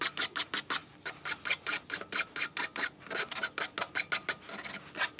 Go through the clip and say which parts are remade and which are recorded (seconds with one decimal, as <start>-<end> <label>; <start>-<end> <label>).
0.0-5.2 recorded